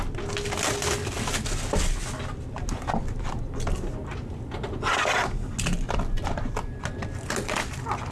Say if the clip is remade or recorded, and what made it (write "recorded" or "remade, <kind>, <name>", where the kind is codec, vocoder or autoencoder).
recorded